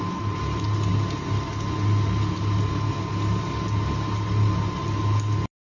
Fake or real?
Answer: real